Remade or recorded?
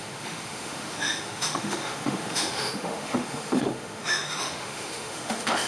remade